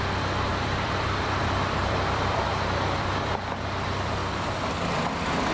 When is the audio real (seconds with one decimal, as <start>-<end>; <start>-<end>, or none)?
0.0-0.5; 3.3-5.5